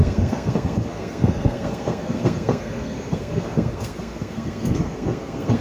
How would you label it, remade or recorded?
remade